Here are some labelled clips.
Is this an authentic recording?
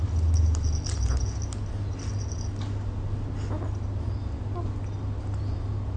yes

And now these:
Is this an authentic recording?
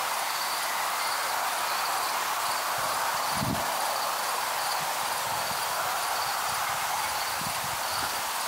yes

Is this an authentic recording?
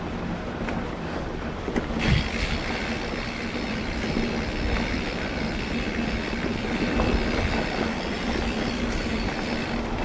no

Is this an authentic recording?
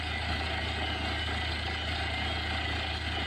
yes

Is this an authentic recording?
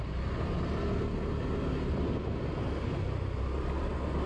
yes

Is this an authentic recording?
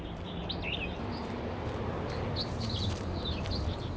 no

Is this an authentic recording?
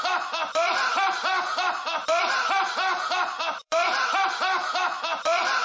no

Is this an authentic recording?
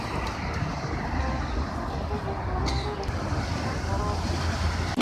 yes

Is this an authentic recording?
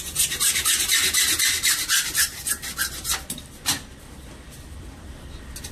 yes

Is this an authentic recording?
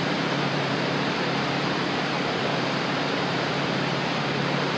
no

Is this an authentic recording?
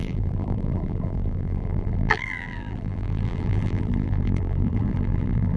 no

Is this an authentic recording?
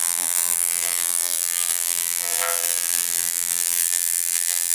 no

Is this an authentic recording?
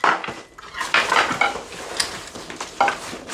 yes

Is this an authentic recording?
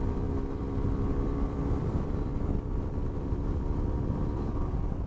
no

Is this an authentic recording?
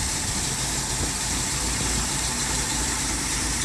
no